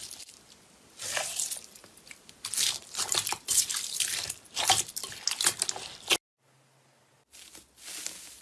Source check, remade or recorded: recorded